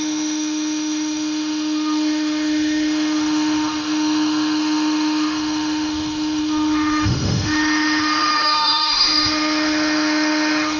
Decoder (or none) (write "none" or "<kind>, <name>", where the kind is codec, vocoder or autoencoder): autoencoder, DAC-VAE